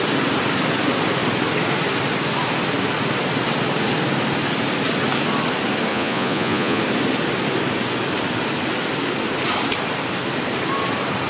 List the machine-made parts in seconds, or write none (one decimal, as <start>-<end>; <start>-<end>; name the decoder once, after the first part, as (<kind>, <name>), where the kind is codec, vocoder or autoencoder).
5.9-6.8 (vocoder, Vocos)